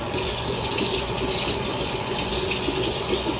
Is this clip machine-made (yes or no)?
yes